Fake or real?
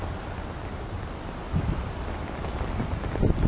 real